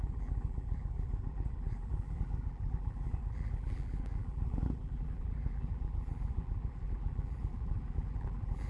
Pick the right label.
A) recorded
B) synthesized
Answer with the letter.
B